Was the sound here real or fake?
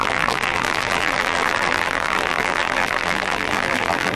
fake